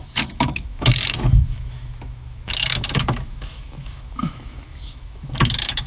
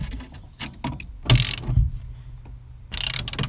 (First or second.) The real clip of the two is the second